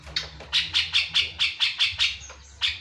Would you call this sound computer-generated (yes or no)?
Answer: no